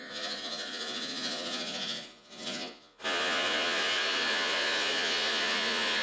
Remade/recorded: remade